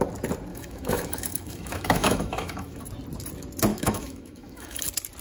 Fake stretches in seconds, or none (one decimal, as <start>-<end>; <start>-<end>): 0.5-2.8; 3.7-4.8